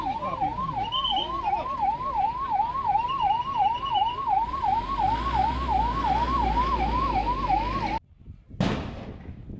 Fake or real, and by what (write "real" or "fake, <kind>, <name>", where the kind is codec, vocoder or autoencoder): real